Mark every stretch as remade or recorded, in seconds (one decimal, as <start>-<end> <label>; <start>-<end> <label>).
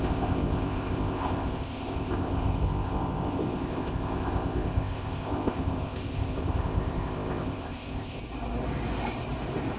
0.0-8.2 remade; 8.2-9.8 recorded